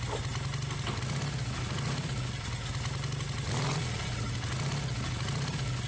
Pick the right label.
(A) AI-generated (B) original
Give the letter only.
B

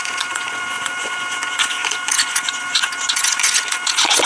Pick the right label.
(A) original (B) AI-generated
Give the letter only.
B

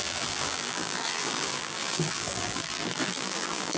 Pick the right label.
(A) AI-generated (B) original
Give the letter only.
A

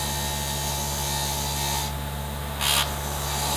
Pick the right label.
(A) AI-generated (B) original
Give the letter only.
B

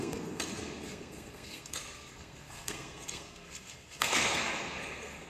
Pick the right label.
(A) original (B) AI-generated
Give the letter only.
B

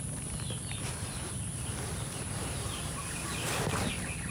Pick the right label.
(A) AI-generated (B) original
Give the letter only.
B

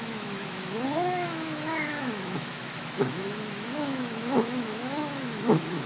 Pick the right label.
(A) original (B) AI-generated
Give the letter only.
B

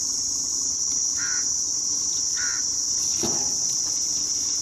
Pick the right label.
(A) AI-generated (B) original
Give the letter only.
B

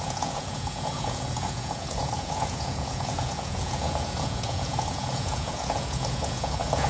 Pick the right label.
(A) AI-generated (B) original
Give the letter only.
A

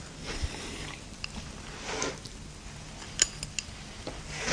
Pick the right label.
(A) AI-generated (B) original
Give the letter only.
B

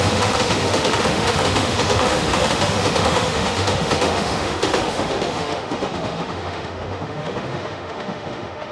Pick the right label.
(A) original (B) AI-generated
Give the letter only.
B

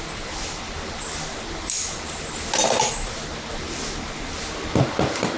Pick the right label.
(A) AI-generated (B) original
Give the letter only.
B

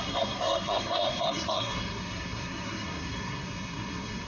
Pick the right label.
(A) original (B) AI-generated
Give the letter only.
B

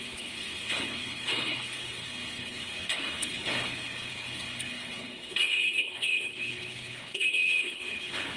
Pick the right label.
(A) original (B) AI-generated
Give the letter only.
B